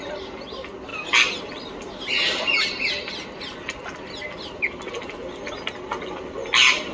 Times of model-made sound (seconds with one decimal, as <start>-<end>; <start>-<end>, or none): none